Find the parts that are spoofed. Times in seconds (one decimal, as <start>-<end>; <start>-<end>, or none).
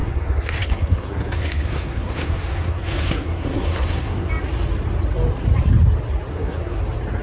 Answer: 0.0-4.3; 6.3-6.8